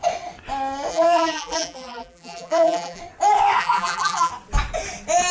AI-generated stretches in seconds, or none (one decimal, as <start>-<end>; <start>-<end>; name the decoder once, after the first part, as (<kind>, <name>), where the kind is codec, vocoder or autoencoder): 0.9-3.0 (vocoder, BigVGAN v2); 3.6-4.3